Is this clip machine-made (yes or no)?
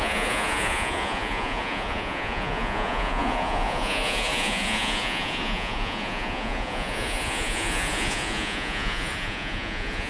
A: yes